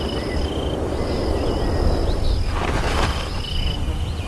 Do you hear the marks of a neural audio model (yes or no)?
no